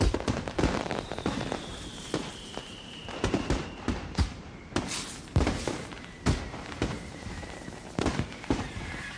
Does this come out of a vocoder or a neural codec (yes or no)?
yes